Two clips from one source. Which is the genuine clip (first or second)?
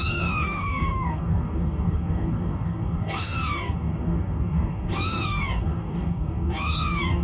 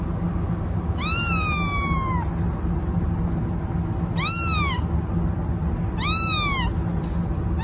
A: second